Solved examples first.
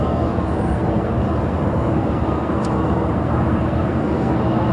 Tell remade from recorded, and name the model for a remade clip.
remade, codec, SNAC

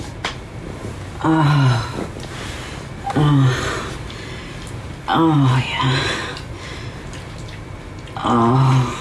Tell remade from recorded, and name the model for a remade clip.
recorded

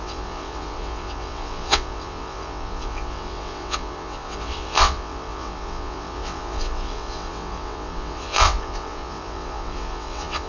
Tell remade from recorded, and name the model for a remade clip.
remade, vocoder, WaveNeXt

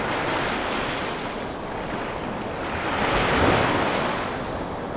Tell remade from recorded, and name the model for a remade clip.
recorded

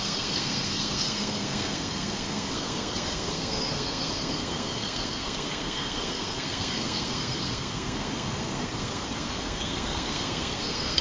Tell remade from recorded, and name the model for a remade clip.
remade, codec, SNAC